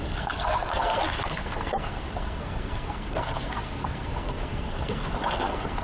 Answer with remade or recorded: remade